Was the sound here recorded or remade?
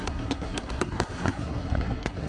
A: remade